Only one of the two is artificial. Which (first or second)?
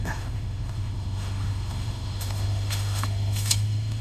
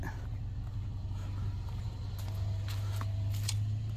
first